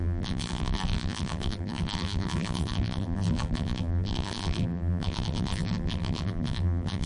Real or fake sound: fake